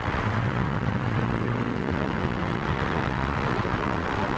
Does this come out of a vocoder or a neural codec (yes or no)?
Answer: yes